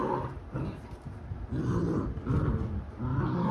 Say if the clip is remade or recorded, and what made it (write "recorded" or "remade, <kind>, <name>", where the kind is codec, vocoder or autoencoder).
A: recorded